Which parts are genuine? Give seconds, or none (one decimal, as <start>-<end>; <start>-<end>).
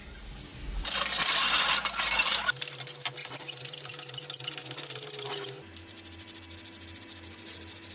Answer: 0.0-3.2; 3.9-7.9